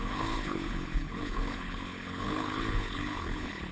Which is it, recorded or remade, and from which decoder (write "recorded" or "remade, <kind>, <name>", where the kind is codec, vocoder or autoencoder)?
remade, codec, HILCodec